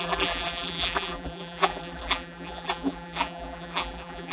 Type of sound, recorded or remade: remade